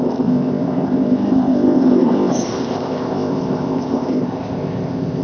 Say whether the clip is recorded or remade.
remade